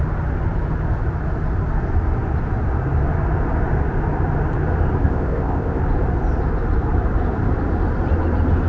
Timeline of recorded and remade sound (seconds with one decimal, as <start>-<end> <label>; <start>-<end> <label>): 0.0-5.0 recorded; 5.0-5.8 remade; 5.8-8.7 recorded

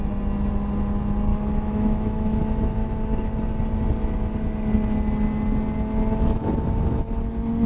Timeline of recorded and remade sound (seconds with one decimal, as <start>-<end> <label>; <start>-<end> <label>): 0.0-1.3 recorded; 1.3-2.4 remade; 2.4-2.8 recorded; 2.8-3.4 remade; 3.4-7.7 recorded